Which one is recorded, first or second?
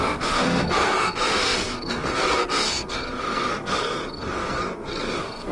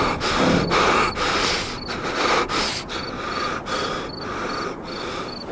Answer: second